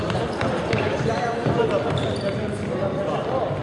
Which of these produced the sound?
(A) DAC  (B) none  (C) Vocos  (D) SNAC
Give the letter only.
B